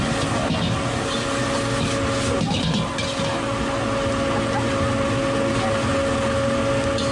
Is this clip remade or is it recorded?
recorded